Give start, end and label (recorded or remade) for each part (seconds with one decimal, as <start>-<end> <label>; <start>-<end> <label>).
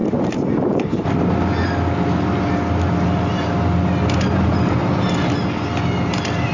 0.0-6.5 recorded